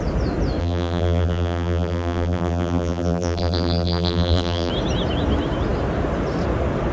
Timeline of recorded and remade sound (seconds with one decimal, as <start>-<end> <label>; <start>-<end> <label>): 0.0-0.6 recorded; 0.6-4.7 remade; 4.7-6.9 recorded